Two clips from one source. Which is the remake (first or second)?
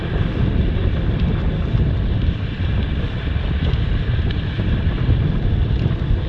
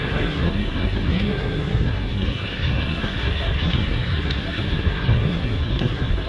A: second